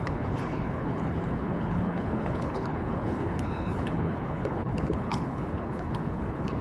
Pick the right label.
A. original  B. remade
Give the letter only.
B